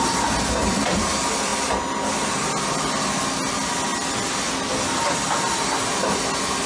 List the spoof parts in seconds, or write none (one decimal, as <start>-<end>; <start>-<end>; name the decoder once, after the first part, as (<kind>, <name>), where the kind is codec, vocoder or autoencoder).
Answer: none